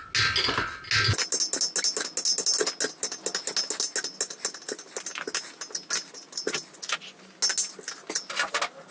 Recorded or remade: recorded